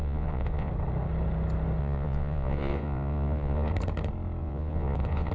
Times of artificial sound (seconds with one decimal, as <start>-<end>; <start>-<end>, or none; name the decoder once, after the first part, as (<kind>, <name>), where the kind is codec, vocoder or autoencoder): 0.0-0.7 (vocoder, Vocos); 1.8-3.7; 4.4-5.3

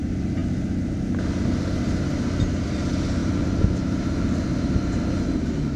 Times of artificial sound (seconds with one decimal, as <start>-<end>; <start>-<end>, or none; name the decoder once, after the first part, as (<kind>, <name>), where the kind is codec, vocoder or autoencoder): 3.2-5.0 (vocoder, BigVGAN v2)

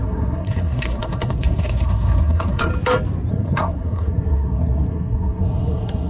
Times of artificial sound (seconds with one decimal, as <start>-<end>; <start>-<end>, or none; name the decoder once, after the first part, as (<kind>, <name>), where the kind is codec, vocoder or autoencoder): 0.0-2.7 (codec, SNAC); 3.3-6.1